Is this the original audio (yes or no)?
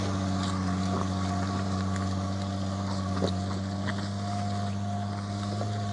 yes